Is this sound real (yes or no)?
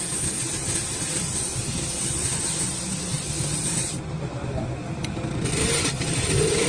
yes